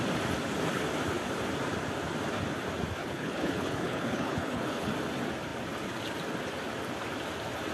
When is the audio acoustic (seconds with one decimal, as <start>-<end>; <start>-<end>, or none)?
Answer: 0.0-3.0; 4.9-7.7